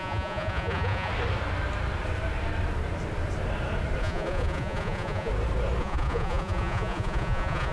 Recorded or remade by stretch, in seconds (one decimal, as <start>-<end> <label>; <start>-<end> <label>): 0.0-1.1 remade; 1.1-4.0 recorded; 4.0-5.3 remade; 5.3-5.8 recorded; 5.8-7.7 remade